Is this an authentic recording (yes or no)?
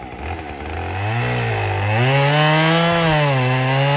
yes